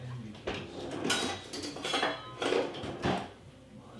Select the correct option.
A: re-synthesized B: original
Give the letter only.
B